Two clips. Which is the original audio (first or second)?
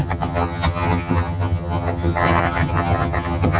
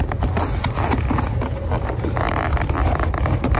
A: second